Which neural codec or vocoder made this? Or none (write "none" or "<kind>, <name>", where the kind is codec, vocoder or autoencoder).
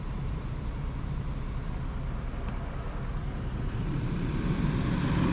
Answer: none